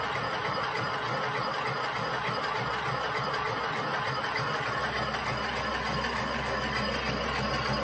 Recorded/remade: recorded